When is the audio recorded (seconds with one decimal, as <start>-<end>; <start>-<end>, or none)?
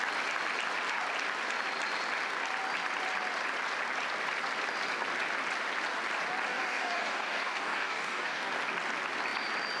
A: 0.0-6.5; 8.5-9.8